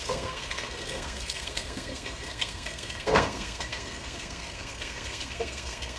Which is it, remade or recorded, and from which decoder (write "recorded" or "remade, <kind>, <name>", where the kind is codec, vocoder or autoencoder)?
remade, codec, SNAC